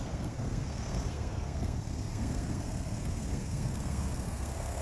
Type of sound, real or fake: fake